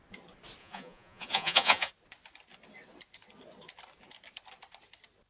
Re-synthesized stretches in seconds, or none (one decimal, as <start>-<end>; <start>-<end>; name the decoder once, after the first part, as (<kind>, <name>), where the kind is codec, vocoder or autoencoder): 0.6-1.9 (vocoder, Vocos)